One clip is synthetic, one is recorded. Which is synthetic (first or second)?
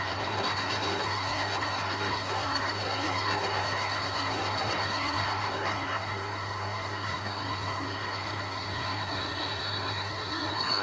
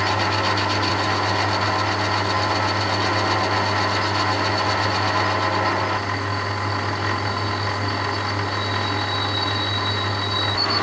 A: first